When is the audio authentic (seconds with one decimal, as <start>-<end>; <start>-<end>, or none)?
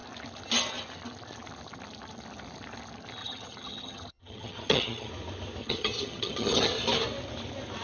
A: 0.0-3.2; 5.1-5.6; 6.7-7.8